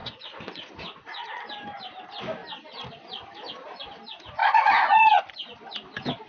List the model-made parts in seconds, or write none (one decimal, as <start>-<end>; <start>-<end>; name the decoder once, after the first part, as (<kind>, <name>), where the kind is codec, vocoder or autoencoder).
0.0-1.4 (vocoder, Vocos); 4.4-5.2